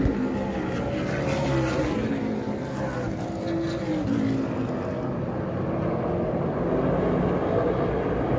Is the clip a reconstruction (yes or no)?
no